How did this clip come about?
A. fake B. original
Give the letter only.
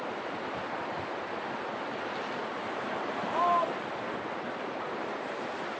B